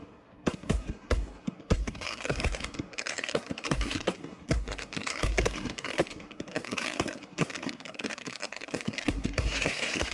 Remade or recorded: remade